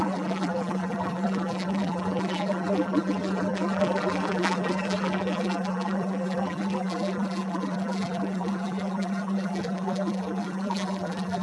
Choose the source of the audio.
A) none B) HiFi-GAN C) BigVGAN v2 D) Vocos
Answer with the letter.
C